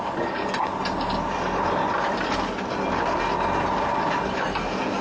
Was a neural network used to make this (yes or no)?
no